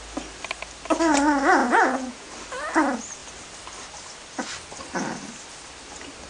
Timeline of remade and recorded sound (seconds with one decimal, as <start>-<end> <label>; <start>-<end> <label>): 0.0-1.6 recorded; 1.6-2.3 remade; 2.3-6.3 recorded